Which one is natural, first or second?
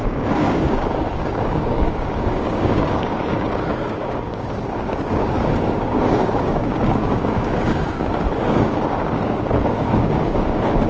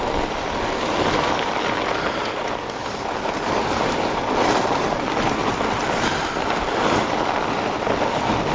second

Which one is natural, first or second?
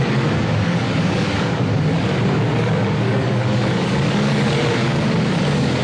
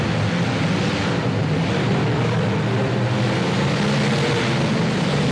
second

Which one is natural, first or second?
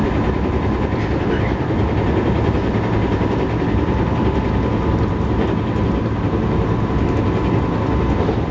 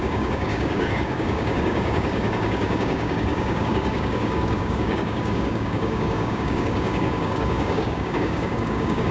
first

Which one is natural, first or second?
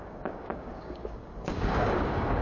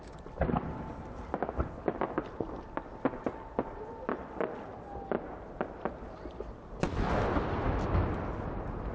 second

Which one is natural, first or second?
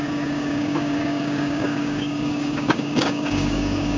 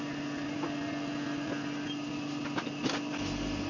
second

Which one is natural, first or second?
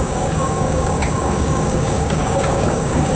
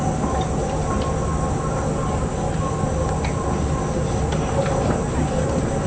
second